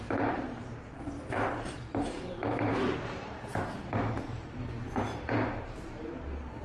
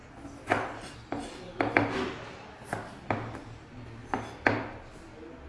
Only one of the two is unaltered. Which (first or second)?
second